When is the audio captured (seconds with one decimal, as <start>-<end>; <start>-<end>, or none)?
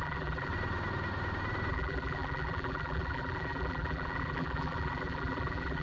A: 0.5-1.7